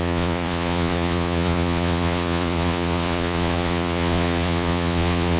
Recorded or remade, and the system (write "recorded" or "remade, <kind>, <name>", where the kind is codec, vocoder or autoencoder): remade, vocoder, Vocos